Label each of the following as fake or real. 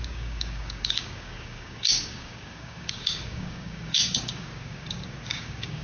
fake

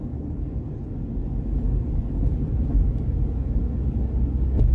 fake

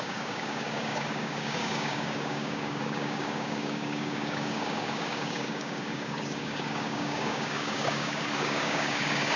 fake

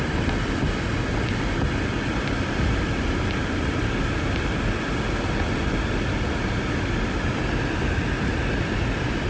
real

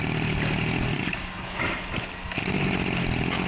real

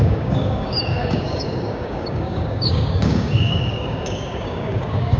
fake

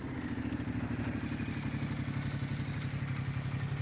real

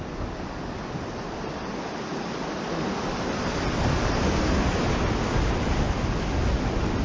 real